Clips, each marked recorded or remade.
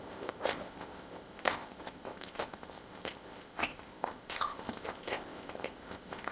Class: remade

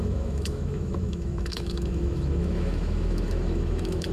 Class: remade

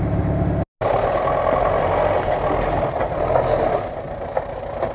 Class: recorded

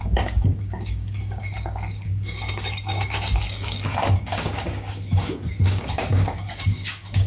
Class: remade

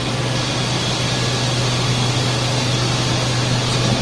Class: recorded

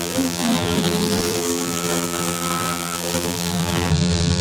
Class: remade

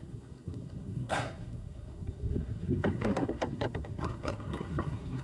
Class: remade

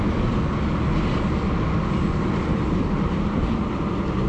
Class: recorded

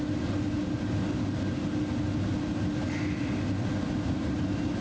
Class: recorded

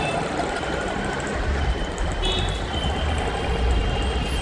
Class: recorded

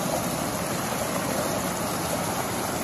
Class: recorded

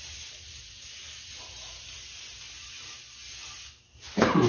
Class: recorded